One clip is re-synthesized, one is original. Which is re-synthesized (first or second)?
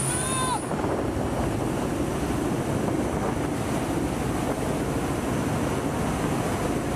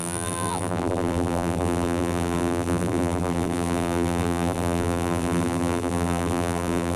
second